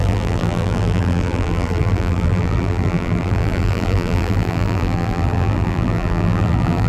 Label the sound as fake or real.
fake